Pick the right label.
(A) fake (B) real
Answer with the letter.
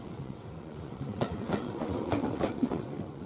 A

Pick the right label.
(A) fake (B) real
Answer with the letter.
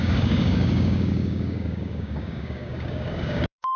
A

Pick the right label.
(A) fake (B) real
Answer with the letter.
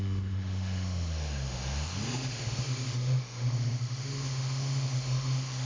A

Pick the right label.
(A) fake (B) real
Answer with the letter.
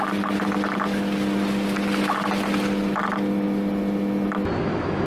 B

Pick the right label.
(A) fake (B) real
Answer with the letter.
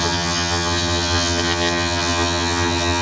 A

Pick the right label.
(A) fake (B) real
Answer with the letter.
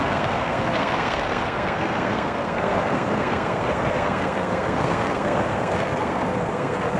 A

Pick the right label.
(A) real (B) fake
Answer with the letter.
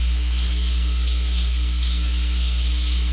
B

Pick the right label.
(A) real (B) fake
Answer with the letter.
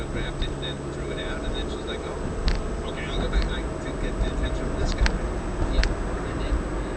A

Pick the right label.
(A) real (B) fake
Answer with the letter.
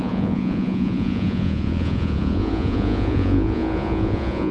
B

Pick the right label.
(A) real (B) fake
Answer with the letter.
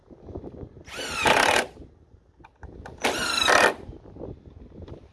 B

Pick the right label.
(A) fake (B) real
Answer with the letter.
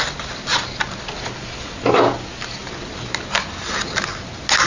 B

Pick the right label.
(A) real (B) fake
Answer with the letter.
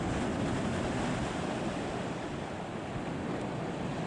A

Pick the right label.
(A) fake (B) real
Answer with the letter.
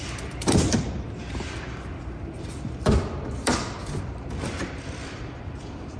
A